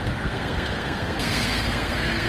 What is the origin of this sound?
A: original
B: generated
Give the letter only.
B